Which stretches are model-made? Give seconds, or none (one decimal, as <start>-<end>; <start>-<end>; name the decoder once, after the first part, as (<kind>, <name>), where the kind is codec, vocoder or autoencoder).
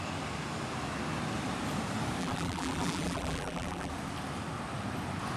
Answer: 2.2-3.9 (vocoder, BigVGAN v2)